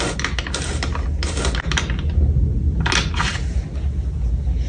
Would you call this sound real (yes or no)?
yes